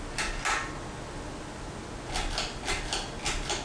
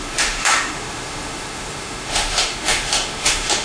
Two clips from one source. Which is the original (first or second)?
first